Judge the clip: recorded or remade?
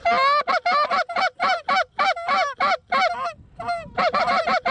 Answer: recorded